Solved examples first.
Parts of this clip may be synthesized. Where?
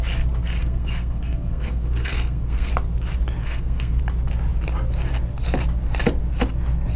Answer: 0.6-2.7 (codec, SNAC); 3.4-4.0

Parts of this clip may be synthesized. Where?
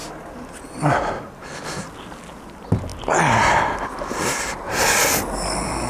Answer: none